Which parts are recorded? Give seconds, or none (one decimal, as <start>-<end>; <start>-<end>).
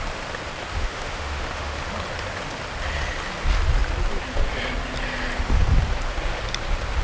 0.0-0.7; 1.8-7.0